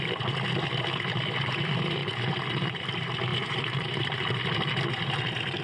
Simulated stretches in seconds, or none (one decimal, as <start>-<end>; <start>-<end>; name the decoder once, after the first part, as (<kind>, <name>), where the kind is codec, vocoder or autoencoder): 2.0-2.8 (vocoder, BigVGAN v2); 3.3-4.0